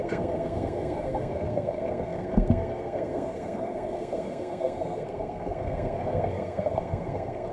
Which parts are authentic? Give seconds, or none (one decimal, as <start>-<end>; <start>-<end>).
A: none